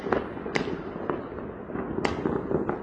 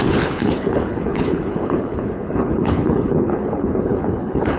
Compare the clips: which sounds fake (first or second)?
second